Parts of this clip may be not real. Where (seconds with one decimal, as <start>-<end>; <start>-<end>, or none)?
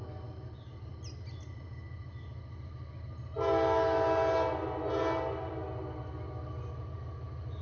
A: none